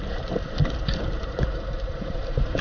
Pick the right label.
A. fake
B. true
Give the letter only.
A